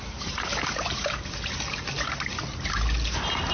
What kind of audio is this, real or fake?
real